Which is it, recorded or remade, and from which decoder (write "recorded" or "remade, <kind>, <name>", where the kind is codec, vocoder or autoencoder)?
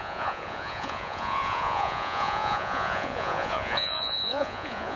remade, vocoder, Vocos